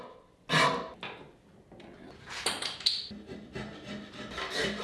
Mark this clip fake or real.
real